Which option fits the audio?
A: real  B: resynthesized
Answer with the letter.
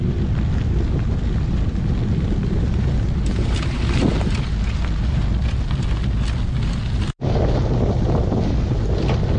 A